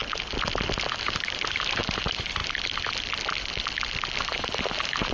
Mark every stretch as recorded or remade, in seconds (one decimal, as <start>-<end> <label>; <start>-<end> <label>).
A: 0.0-0.9 recorded; 0.9-2.4 remade; 2.4-4.2 recorded; 4.2-5.1 remade

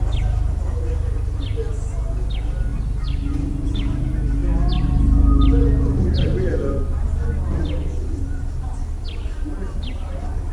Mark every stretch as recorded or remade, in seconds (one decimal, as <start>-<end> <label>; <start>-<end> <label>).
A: 0.0-10.5 recorded

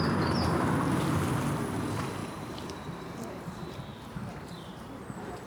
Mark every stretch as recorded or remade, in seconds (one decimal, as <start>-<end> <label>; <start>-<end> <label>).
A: 0.0-2.2 recorded; 2.2-5.0 remade; 5.0-5.5 recorded

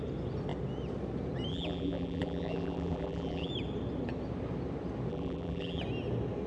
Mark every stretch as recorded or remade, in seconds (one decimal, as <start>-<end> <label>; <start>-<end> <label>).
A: 0.0-1.5 recorded; 1.5-3.5 remade; 3.5-5.1 recorded; 5.1-5.8 remade; 5.8-6.5 recorded

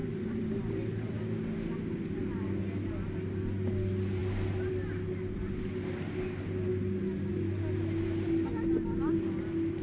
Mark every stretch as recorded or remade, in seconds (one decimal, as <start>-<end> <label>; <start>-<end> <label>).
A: 0.0-1.4 remade; 1.4-8.5 recorded; 8.5-9.2 remade; 9.2-9.8 recorded

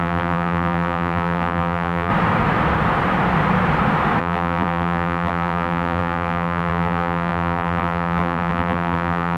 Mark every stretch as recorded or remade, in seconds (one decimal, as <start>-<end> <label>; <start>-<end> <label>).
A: 0.0-2.1 remade; 2.1-4.2 recorded; 4.2-9.4 remade